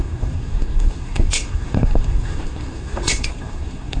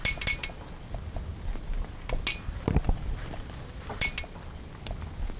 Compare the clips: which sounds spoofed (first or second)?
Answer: first